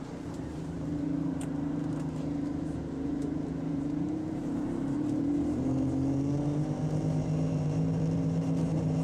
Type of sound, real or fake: fake